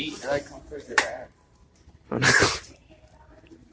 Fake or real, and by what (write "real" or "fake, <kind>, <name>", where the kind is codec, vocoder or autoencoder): fake, vocoder, BigVGAN v2